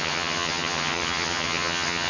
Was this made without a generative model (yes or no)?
no